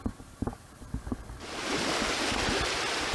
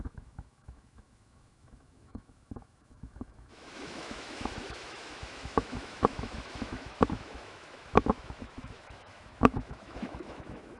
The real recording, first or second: first